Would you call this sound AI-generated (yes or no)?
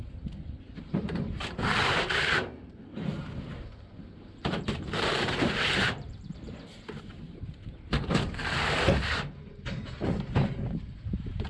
yes